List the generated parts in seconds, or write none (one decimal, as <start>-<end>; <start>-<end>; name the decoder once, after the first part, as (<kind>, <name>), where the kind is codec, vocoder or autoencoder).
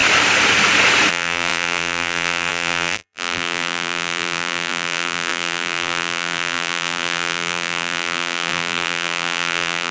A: 1.1-9.9 (vocoder, BigVGAN v2)